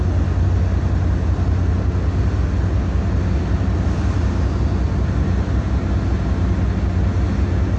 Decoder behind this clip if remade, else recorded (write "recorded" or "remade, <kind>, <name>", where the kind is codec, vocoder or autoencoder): recorded